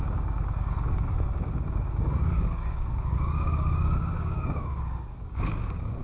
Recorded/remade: remade